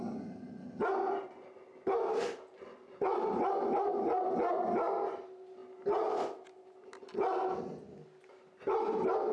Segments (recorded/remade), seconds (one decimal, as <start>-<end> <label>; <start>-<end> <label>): 0.0-9.3 recorded